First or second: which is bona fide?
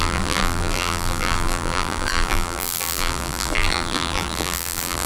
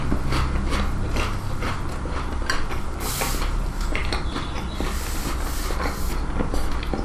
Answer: second